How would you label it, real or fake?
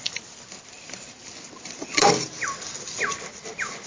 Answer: real